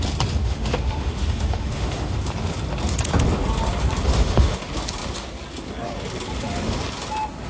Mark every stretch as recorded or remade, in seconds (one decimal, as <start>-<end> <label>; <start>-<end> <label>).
0.0-0.4 recorded; 0.4-2.1 remade; 2.1-4.1 recorded; 4.1-4.6 remade; 4.6-7.5 recorded